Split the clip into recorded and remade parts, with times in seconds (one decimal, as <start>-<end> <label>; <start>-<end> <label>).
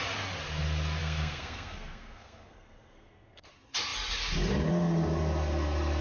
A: 0.0-1.0 recorded; 1.0-3.5 remade; 3.5-6.0 recorded